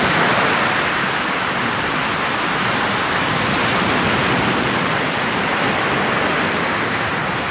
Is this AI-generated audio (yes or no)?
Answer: no